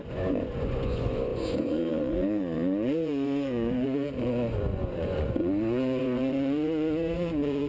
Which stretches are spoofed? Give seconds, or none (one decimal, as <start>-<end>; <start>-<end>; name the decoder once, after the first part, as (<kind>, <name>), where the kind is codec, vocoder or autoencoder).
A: 0.0-7.7 (vocoder, Vocos)